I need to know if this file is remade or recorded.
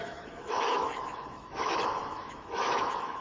remade